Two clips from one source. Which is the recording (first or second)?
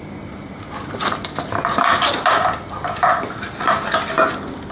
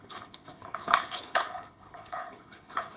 first